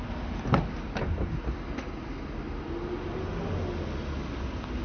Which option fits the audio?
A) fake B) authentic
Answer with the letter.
B